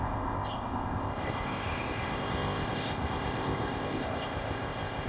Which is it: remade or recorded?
remade